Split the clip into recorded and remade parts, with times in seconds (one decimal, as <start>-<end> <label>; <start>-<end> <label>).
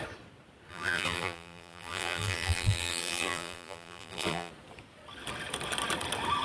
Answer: 0.0-0.7 recorded; 0.7-4.5 remade; 4.5-6.4 recorded